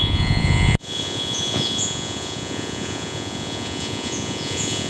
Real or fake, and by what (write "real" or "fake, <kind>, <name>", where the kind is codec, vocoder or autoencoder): fake, vocoder, Vocos